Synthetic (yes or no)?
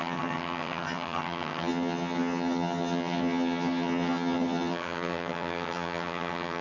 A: yes